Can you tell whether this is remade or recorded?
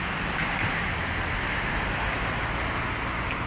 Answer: recorded